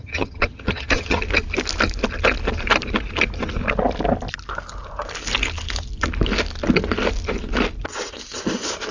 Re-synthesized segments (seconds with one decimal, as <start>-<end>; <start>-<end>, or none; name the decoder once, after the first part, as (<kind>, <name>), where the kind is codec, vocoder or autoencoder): 0.0-1.2 (vocoder, HiFi-GAN)